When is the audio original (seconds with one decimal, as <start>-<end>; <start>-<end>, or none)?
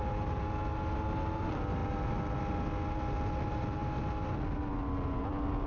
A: 0.0-5.7